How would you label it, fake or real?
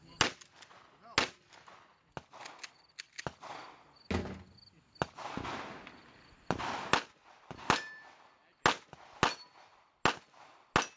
real